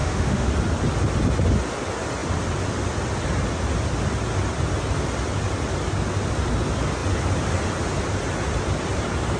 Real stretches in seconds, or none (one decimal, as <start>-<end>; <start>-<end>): 0.5-9.4